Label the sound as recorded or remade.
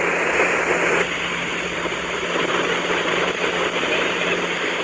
recorded